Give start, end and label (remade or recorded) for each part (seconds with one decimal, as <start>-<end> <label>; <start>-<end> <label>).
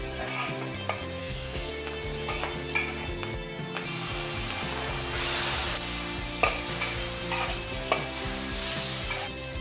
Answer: 0.0-1.2 recorded; 1.2-1.7 remade; 1.7-9.6 recorded